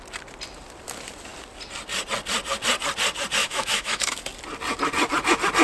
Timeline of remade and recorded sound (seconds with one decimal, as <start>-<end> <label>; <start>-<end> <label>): 0.0-3.4 recorded; 3.4-4.2 remade; 4.2-5.6 recorded